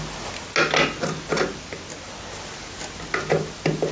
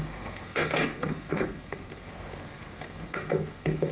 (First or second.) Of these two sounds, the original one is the first